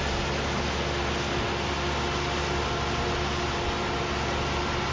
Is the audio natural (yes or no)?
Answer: yes